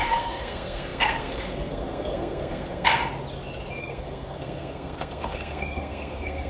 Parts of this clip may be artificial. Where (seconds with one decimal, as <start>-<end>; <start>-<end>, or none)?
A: 0.0-3.0; 3.8-6.5